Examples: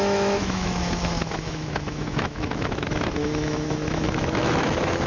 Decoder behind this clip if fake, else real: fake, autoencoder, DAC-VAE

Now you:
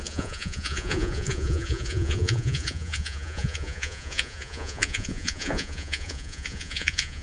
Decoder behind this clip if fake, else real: fake, vocoder, Vocos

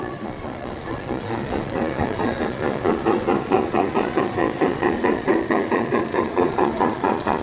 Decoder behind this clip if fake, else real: fake, vocoder, Vocos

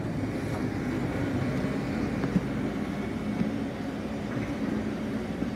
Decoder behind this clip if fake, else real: real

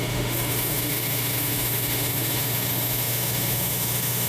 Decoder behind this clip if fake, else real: fake, autoencoder, DAC-VAE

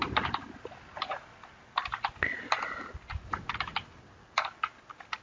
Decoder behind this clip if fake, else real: real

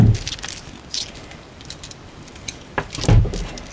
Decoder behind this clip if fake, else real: fake, vocoder, BigVGAN v2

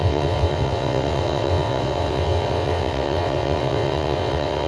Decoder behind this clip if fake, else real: fake, vocoder, WaveNeXt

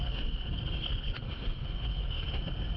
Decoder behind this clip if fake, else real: fake, codec, SNAC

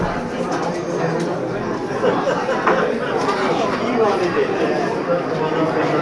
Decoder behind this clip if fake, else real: real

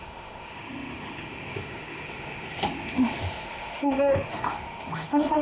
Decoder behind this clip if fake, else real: fake, autoencoder, DAC-VAE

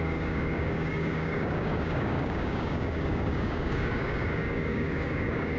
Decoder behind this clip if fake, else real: fake, codec, DAC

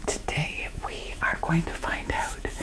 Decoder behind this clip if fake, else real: fake, autoencoder, DAC-VAE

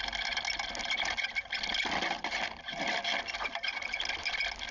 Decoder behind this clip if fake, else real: real